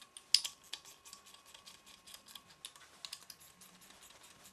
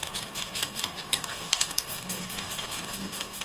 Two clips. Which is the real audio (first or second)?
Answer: first